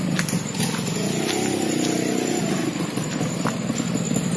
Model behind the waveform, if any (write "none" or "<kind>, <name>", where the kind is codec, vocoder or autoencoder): none